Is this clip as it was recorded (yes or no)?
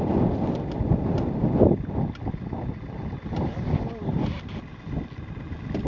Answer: yes